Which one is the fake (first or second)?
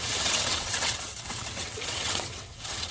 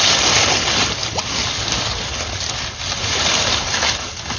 first